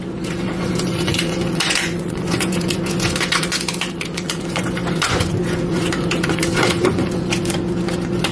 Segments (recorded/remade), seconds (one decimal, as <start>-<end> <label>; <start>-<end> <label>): 0.0-8.3 remade